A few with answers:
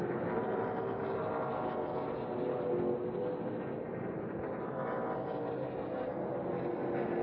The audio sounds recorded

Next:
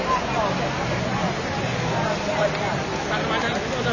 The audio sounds recorded